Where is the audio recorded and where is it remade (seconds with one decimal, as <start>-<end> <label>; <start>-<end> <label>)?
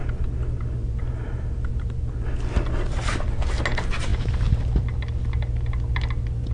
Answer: 0.0-6.5 recorded